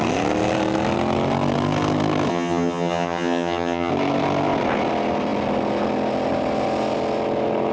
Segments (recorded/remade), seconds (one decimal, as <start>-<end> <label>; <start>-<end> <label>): 0.0-2.3 recorded; 2.3-3.9 remade; 3.9-7.7 recorded